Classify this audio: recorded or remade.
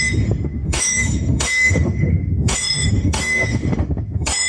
remade